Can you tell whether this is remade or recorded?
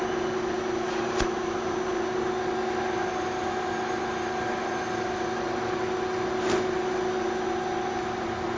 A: recorded